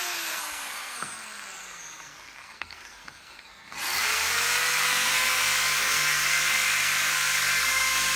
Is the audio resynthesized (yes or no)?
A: yes